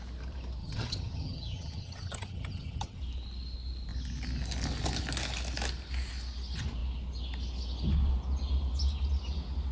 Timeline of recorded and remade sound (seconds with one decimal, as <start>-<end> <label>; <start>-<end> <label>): 0.0-0.6 recorded; 0.6-3.0 remade; 3.0-9.7 recorded